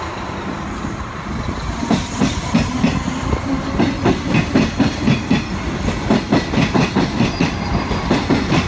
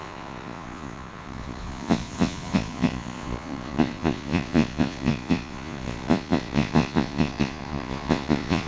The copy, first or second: second